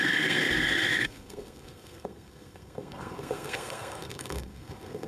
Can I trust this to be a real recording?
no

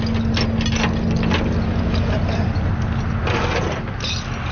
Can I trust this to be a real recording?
yes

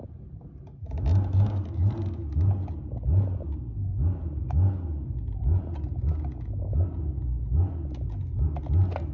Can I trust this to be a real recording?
yes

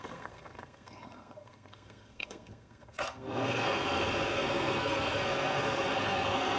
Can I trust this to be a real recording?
no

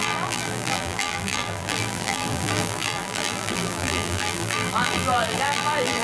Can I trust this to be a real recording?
no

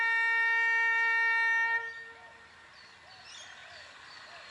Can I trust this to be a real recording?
yes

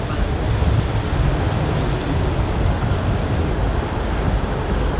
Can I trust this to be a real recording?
yes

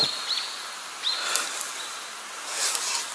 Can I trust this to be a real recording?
no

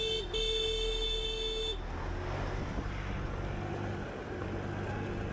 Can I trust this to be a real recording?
yes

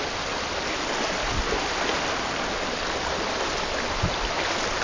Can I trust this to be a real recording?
yes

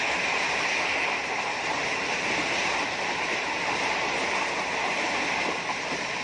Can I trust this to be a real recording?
yes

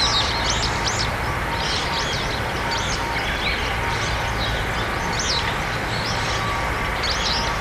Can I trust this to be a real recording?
yes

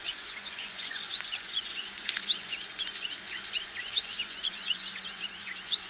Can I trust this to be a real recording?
no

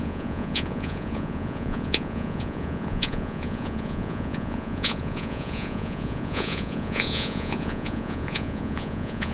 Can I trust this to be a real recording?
no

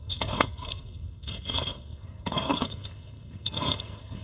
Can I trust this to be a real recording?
no